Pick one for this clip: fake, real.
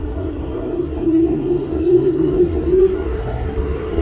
fake